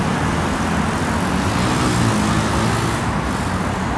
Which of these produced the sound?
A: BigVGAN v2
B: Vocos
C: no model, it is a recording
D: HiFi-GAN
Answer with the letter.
C